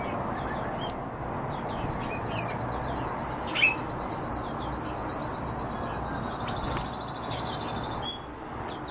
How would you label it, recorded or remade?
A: recorded